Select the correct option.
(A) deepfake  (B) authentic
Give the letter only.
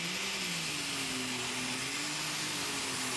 B